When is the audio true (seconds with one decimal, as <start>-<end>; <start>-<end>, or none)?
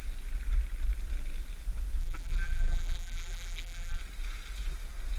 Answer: 0.0-2.0; 4.0-5.2